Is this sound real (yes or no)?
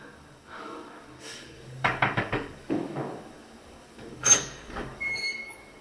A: no